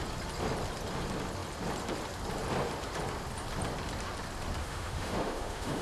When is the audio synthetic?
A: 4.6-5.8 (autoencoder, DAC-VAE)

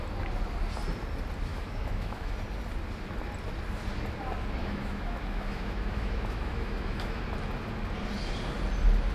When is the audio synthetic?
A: 1.5-2.3 (autoencoder, DAC-VAE); 4.6-7.2

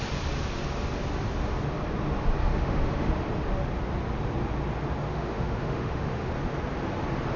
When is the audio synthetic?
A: 2.4-3.1 (autoencoder, DAC-VAE); 5.1-6.3